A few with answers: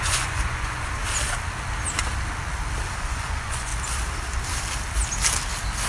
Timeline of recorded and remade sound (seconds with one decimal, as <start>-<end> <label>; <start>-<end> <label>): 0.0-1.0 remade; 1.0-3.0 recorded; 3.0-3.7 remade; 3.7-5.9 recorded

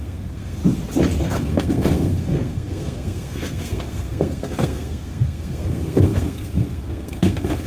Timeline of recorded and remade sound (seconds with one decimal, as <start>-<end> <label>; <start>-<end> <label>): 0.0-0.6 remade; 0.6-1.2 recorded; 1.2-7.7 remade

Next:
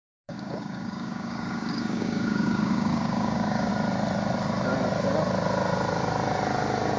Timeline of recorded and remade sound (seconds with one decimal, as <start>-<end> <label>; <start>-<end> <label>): 0.0-3.7 remade; 3.7-7.0 recorded

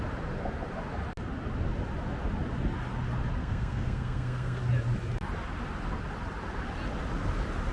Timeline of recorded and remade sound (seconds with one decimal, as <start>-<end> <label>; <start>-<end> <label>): 0.0-3.4 recorded; 3.4-4.6 remade; 4.6-7.7 recorded

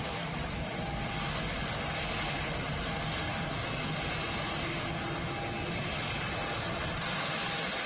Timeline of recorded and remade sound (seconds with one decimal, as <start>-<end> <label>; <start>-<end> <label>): 0.0-7.9 recorded

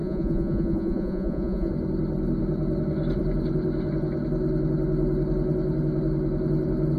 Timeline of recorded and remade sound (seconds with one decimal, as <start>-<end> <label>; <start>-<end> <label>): 0.0-1.7 remade; 1.7-7.0 recorded

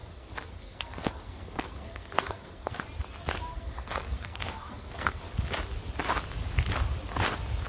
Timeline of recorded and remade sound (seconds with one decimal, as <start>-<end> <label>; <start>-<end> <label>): 0.0-2.8 remade; 2.8-3.5 recorded; 3.5-5.2 remade; 5.2-7.7 recorded